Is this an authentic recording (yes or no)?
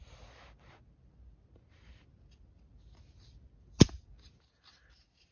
yes